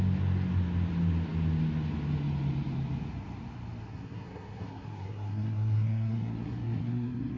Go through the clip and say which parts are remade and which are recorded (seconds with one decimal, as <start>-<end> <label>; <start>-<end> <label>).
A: 0.0-3.9 recorded; 3.9-7.4 remade

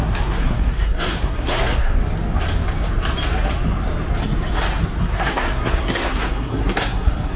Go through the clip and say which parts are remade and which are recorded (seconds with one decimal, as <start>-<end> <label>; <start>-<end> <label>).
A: 0.0-2.0 remade; 2.0-5.0 recorded; 5.0-7.4 remade

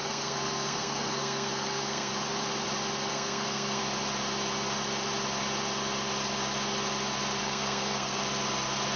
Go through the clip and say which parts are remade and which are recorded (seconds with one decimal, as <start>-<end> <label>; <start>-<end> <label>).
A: 0.0-2.1 remade; 2.1-3.1 recorded; 3.1-3.8 remade; 3.8-7.4 recorded; 7.4-8.2 remade; 8.2-9.0 recorded

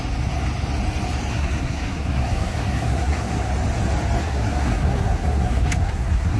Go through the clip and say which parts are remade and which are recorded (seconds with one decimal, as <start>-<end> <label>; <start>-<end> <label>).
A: 0.0-1.3 recorded; 1.3-3.5 remade; 3.5-4.2 recorded; 4.2-6.4 remade

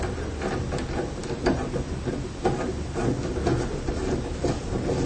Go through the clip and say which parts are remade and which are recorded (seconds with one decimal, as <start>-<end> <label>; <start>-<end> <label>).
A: 0.0-5.1 recorded

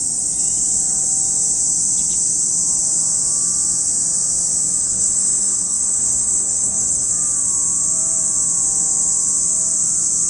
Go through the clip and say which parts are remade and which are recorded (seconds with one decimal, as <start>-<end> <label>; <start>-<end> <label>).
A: 0.0-4.8 recorded; 4.8-7.1 remade; 7.1-10.3 recorded

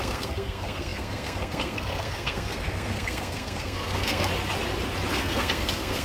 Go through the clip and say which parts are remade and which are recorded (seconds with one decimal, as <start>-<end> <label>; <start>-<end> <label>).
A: 0.0-4.3 remade; 4.3-5.1 recorded; 5.1-6.0 remade